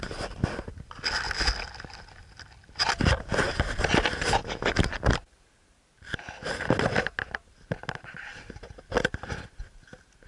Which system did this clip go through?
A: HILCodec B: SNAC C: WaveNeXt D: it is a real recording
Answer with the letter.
D